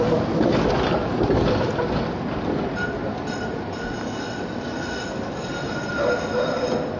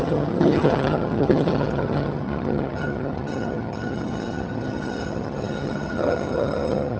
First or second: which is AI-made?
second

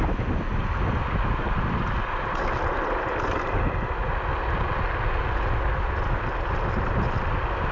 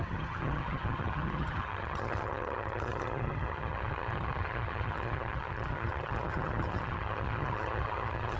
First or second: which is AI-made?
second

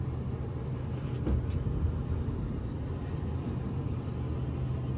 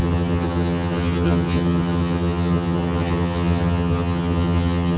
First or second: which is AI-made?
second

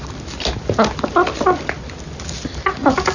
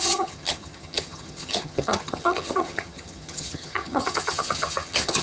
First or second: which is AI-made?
second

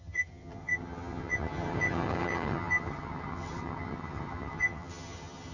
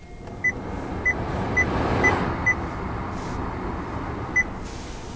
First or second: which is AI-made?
first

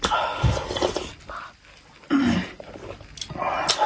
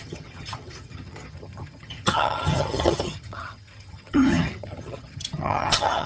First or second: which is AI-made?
second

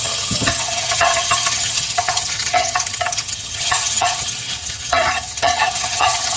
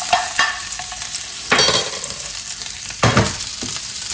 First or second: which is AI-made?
first